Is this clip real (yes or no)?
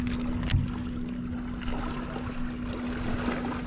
yes